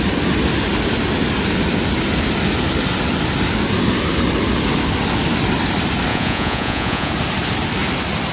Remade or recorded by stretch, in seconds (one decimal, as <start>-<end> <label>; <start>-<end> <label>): 0.0-6.1 recorded; 6.1-7.1 remade; 7.1-8.3 recorded